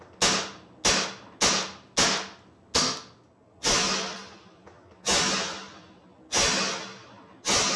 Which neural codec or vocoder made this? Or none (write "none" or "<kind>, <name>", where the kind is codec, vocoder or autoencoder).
none